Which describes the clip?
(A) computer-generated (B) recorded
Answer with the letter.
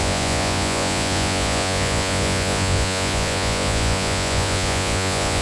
A